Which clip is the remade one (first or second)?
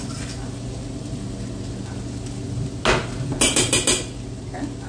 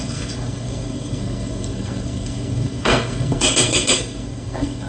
second